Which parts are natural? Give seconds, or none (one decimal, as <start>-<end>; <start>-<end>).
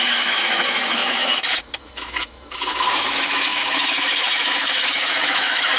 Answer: none